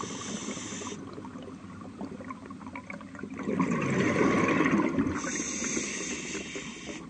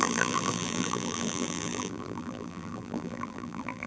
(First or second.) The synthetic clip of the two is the second